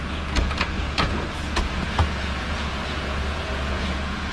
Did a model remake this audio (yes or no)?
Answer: yes